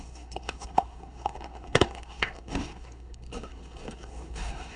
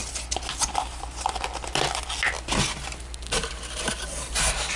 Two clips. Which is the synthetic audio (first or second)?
first